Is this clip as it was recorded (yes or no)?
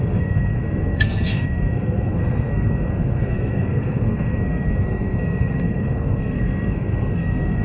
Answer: no